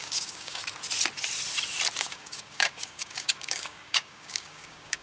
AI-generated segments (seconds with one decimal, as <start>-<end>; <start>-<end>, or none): 0.0-0.6; 2.0-5.0